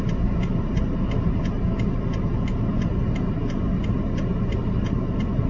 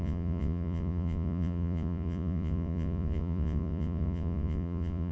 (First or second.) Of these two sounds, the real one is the first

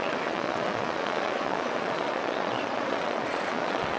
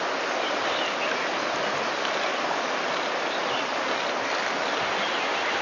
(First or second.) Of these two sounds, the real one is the second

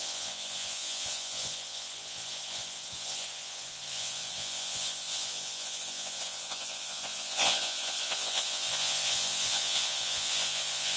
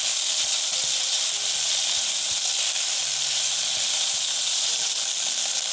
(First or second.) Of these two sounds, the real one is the second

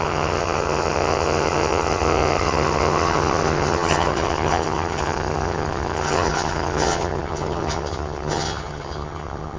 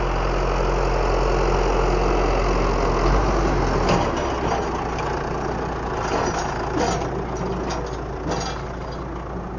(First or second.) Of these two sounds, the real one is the second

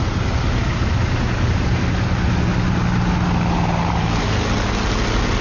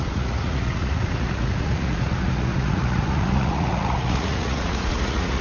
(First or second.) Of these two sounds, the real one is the first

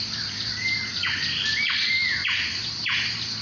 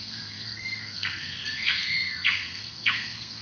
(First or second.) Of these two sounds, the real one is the first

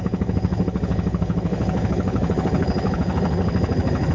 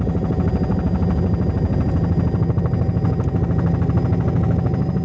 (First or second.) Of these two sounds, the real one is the second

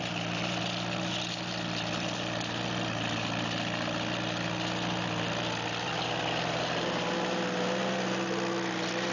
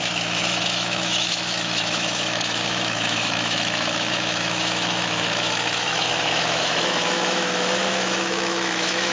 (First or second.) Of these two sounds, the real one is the first